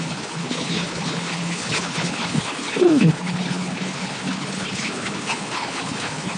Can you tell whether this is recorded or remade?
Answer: remade